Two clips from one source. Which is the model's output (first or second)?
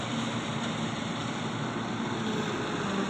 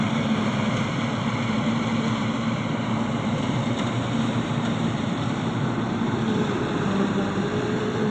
second